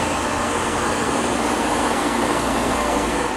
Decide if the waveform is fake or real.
fake